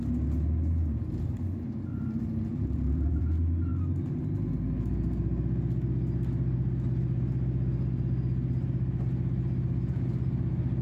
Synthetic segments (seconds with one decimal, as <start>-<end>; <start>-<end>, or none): 2.5-3.2